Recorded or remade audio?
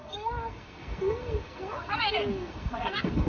remade